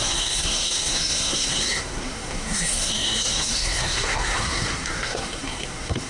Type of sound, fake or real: fake